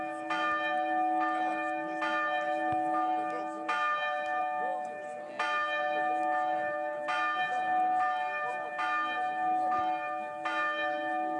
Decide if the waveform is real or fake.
real